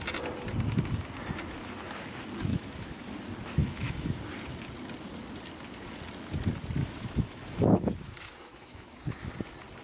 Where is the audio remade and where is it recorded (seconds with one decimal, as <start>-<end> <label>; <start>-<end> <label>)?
0.0-2.5 recorded; 2.5-3.1 remade; 3.1-3.6 recorded; 3.6-4.2 remade; 4.2-6.8 recorded; 6.8-9.4 remade; 9.4-9.8 recorded